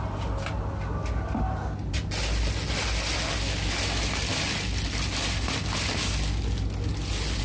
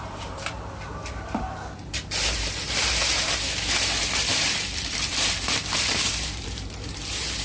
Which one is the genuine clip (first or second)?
first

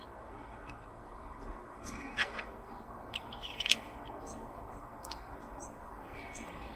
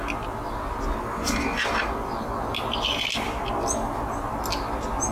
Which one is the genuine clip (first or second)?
second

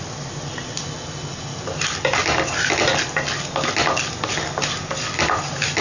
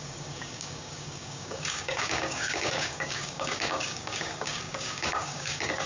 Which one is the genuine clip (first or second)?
first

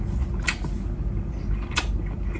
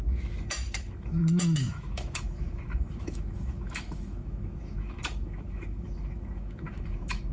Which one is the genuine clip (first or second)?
first